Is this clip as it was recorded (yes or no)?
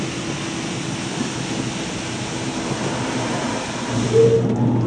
yes